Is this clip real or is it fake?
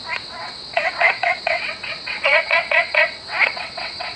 fake